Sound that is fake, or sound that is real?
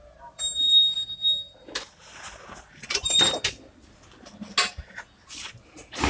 real